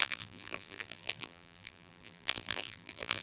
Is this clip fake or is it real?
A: fake